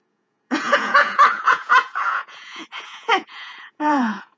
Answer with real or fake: fake